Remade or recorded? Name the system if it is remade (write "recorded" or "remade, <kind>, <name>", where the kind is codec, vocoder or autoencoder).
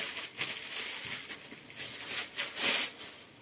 recorded